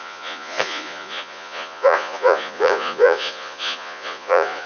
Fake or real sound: fake